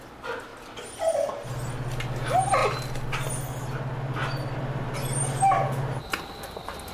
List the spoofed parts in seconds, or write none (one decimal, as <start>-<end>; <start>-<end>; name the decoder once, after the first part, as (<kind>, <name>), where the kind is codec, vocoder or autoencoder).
none